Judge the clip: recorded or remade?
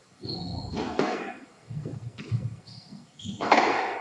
remade